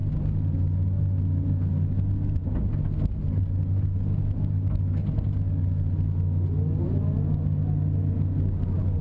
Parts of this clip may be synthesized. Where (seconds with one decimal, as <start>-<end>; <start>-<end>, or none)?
none

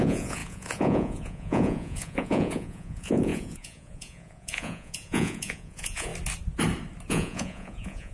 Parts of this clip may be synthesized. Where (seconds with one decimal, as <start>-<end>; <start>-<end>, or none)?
0.0-6.1; 7.1-8.1

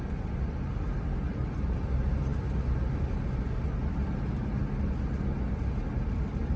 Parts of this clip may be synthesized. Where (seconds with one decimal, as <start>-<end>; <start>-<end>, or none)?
none

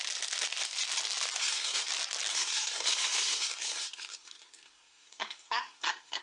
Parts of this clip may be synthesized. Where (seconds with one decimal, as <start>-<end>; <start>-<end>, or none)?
1.4-1.9; 2.3-6.2

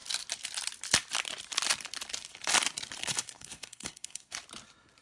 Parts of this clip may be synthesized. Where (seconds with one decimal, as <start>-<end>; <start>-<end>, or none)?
3.0-4.3

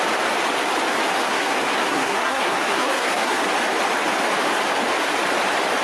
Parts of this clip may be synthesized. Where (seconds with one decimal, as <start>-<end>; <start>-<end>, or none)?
1.2-3.4

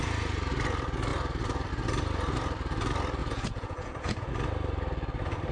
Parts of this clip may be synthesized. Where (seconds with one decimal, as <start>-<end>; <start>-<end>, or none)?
3.2-4.3

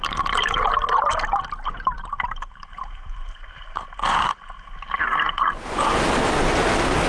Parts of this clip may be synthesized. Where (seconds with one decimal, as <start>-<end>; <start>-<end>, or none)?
0.0-4.3